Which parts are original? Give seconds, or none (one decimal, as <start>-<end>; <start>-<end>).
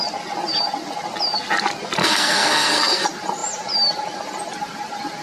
0.0-2.0; 3.0-5.2